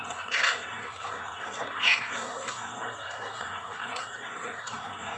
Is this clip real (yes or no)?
no